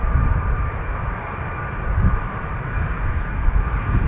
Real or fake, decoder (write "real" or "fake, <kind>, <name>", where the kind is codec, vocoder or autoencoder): fake, vocoder, BigVGAN v2